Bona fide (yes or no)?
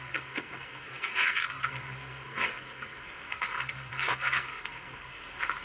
no